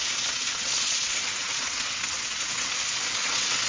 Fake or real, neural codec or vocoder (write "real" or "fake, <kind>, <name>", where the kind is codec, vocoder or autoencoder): fake, vocoder, WaveNeXt